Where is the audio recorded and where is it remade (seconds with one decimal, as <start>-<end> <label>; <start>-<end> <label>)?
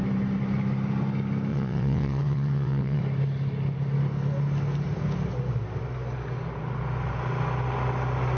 0.0-1.5 recorded; 1.5-3.0 remade; 3.0-8.4 recorded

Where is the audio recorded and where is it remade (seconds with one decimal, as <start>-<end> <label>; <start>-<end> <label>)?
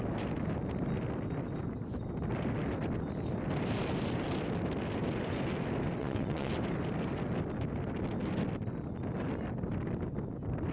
0.0-6.0 recorded; 6.0-6.5 remade; 6.5-10.7 recorded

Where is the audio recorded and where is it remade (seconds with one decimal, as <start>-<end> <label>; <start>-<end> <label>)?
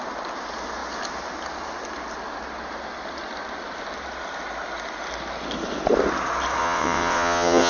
0.0-6.6 recorded; 6.6-7.7 remade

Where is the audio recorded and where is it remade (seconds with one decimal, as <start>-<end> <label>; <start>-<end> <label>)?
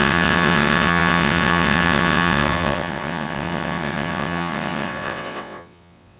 0.0-6.2 remade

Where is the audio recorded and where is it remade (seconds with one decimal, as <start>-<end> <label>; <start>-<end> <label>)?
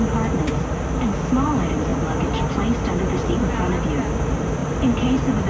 0.0-5.5 recorded